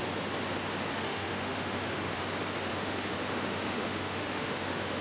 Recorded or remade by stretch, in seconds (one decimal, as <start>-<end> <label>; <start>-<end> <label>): 0.0-0.9 recorded; 0.9-2.2 remade; 2.2-2.7 recorded; 2.7-5.0 remade